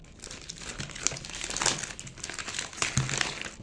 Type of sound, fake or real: real